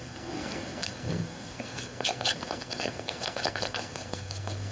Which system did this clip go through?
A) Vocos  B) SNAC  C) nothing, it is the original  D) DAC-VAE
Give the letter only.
B